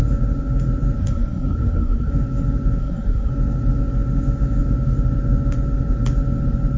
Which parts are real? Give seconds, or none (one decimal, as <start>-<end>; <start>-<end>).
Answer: 0.0-1.0; 2.1-2.8; 3.3-6.8